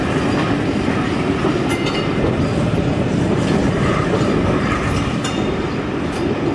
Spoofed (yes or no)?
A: no